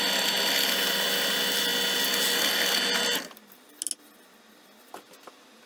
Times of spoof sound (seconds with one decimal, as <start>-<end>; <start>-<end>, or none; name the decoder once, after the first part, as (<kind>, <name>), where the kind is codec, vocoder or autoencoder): none